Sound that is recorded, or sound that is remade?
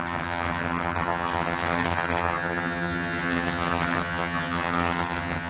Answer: remade